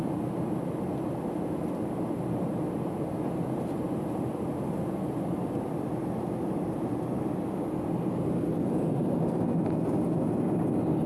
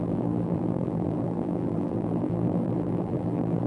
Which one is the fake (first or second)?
second